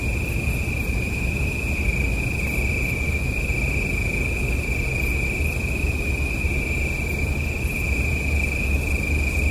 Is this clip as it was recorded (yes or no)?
yes